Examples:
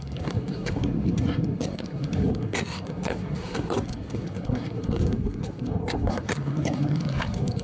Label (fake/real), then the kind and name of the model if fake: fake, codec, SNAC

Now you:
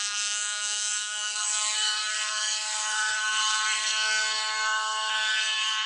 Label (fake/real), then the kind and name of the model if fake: fake, codec, SNAC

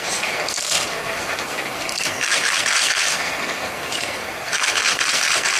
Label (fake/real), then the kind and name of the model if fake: fake, codec, SNAC